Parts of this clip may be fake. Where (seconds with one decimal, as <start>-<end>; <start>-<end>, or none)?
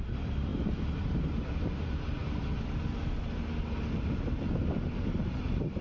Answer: 0.0-2.2; 3.6-5.8